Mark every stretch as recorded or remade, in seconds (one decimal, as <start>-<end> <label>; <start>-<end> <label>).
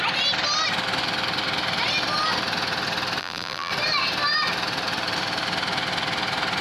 0.0-3.2 recorded; 3.2-3.7 remade; 3.7-6.6 recorded